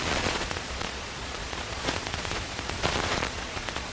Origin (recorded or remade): remade